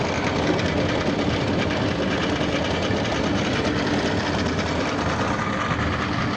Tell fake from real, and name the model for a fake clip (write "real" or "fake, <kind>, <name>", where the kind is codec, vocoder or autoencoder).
real